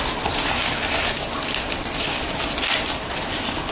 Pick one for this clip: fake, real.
real